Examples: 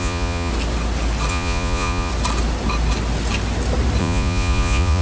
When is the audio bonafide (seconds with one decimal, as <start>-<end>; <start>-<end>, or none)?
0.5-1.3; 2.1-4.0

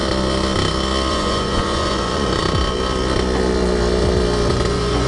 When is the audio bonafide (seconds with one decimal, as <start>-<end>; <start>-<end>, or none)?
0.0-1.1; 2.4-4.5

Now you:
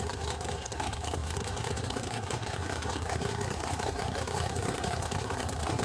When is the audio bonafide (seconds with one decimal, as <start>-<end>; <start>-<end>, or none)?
none

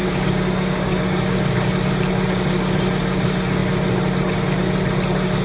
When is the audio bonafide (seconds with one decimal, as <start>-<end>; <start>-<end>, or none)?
1.4-5.4